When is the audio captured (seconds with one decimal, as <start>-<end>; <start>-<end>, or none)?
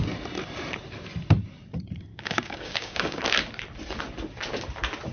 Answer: 0.0-2.1; 3.2-5.1